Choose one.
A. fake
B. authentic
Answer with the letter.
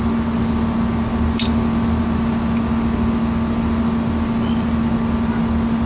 B